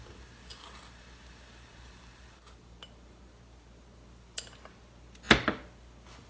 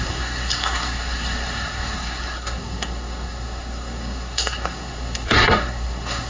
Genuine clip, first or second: first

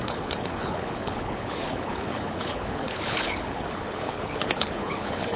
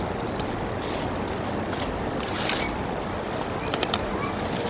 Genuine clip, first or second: second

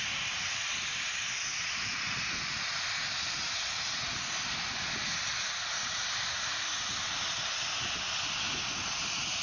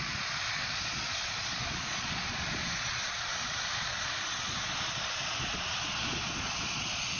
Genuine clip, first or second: first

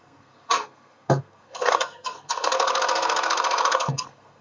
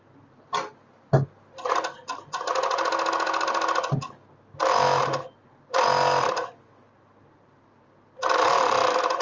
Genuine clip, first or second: second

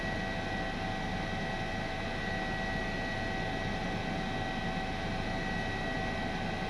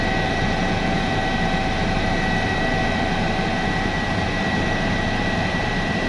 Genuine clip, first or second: first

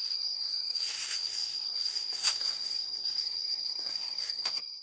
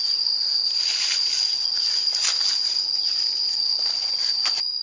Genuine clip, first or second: second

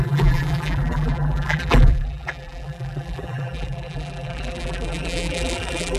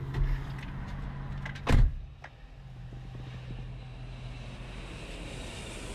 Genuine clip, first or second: second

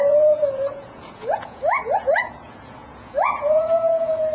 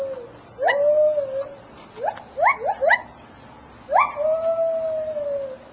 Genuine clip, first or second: second